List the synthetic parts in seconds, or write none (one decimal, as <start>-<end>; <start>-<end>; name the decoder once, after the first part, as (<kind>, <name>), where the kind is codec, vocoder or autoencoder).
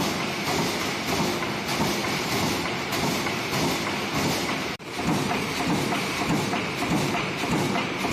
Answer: 2.0-3.4 (vocoder, BigVGAN v2); 4.4-8.1